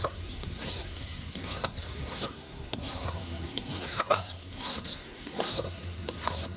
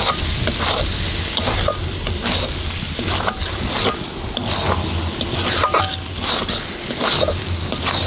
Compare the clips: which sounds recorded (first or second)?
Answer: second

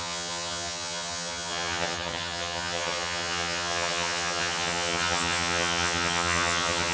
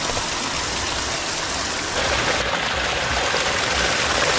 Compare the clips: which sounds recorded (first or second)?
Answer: second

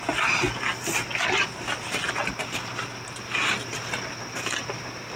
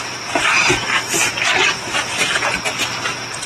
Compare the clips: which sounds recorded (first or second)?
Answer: first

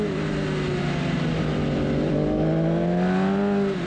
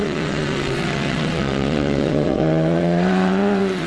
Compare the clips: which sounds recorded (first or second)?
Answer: first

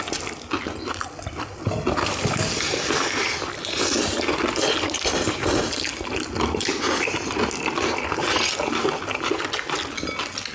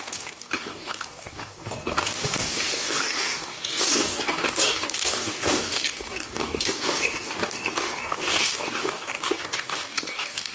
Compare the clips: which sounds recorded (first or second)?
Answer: first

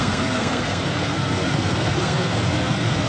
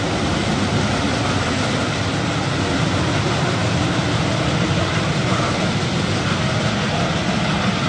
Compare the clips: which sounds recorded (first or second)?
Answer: second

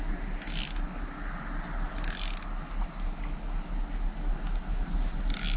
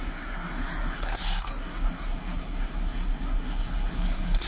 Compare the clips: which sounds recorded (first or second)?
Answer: first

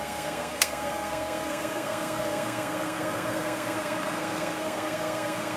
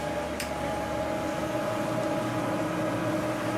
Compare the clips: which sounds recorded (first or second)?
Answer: second